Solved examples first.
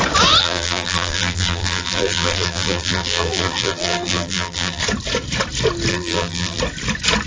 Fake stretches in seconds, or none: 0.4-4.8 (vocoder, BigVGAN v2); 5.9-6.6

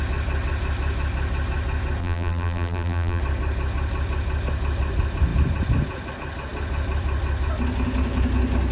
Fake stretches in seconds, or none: 2.0-3.2 (vocoder, BigVGAN v2)